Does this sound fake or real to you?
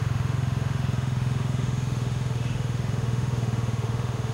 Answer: fake